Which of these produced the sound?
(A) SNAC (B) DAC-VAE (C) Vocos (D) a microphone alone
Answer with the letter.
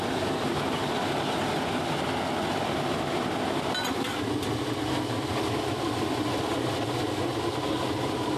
D